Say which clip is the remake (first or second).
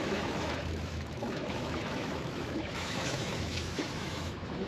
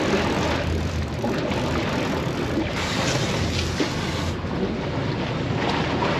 first